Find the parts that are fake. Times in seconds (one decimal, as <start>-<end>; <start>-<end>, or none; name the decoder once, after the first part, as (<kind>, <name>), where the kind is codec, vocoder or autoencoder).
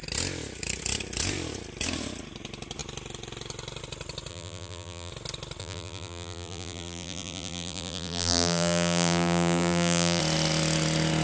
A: 4.3-5.1 (vocoder, BigVGAN v2); 5.6-10.2